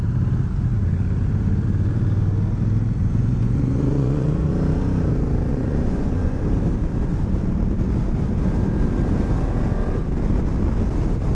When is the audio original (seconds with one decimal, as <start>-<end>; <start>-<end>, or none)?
0.0-3.0; 4.5-5.5; 6.4-11.3